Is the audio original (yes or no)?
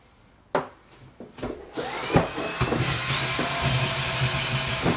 yes